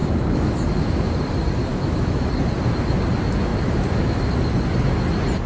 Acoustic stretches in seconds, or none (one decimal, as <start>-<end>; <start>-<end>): 1.1-1.7; 2.3-3.5; 4.3-5.5